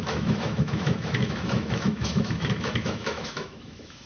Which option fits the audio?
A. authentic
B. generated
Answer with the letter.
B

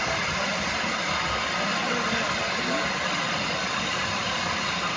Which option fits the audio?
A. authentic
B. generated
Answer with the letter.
A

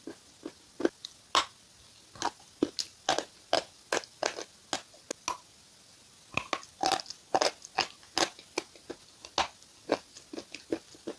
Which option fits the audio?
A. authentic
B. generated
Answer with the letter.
A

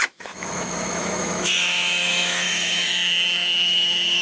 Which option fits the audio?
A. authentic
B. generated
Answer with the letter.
B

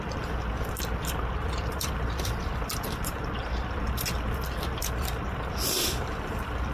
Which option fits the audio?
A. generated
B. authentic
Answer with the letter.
A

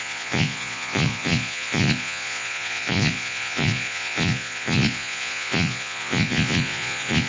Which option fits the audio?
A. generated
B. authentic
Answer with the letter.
A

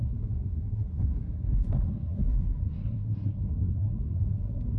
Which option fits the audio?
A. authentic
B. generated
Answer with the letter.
B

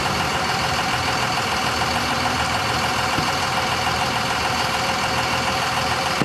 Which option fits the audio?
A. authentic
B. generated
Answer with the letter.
B